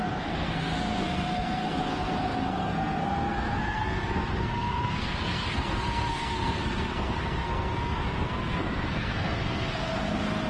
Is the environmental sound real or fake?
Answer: fake